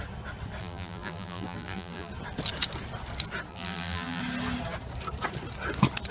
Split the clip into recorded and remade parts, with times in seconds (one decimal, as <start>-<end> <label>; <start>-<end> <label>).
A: 0.0-0.6 recorded; 0.6-2.1 remade; 2.1-3.5 recorded; 3.5-4.2 remade; 4.2-6.1 recorded